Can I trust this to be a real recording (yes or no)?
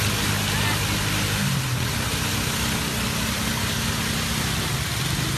yes